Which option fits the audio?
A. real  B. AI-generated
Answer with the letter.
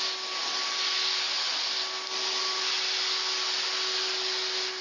A